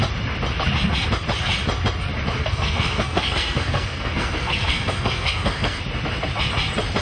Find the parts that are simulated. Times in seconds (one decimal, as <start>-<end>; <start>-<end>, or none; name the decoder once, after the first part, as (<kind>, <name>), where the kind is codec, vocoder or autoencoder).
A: 2.4-5.8 (codec, SNAC)